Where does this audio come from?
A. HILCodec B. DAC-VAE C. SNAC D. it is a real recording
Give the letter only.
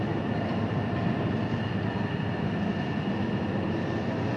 D